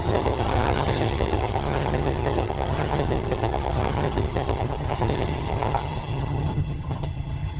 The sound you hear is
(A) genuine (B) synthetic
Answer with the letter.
B